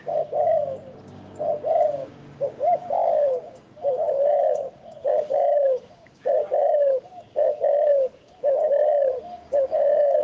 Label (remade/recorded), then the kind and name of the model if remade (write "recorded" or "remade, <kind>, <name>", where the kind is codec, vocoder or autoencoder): remade, codec, DAC